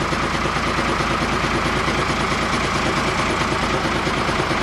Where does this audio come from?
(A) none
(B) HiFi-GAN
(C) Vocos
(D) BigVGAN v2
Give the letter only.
A